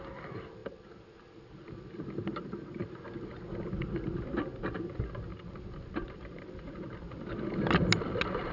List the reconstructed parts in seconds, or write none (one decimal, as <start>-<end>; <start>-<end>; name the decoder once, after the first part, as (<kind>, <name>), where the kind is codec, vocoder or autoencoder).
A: none